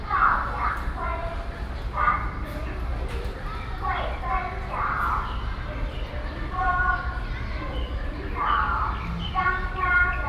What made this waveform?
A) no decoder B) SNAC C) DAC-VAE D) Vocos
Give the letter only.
A